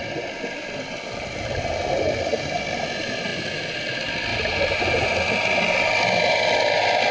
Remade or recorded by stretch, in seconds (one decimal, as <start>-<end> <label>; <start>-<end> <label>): 0.0-4.3 recorded; 4.3-5.1 remade; 5.1-7.1 recorded